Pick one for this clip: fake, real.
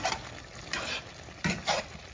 real